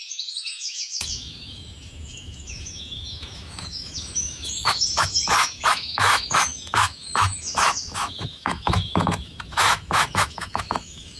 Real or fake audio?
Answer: fake